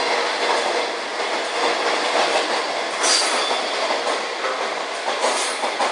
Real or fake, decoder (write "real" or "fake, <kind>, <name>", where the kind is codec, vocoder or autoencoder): real